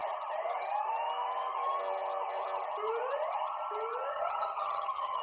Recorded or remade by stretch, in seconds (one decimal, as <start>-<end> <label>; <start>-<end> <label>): 0.0-4.1 recorded; 4.1-5.2 remade